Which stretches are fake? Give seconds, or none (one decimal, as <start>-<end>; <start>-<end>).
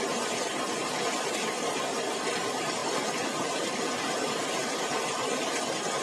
none